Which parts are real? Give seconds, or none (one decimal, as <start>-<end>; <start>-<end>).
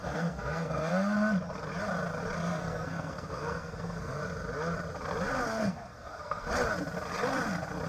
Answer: 0.9-2.4; 4.2-5.6; 6.5-7.9